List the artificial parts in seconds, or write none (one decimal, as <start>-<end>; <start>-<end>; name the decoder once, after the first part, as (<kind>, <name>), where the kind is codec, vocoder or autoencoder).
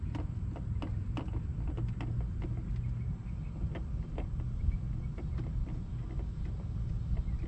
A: 1.5-2.7 (vocoder, BigVGAN v2); 3.1-4.8